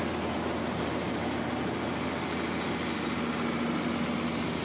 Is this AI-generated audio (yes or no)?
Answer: no